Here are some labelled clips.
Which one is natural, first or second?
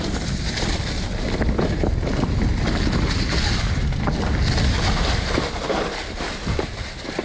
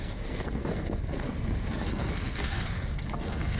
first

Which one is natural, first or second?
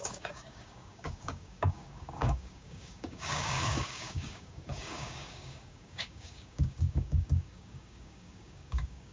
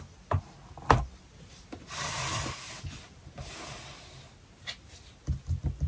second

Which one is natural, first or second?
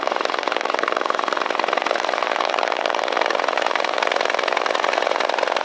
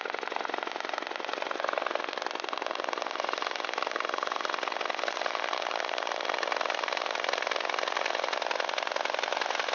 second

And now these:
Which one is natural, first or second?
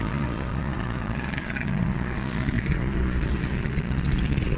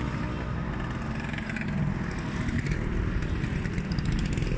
second